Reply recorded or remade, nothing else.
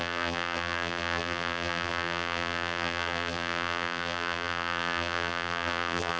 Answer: remade